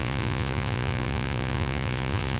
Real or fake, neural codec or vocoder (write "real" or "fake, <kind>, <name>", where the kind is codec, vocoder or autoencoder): fake, vocoder, Vocos